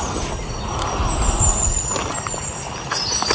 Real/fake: real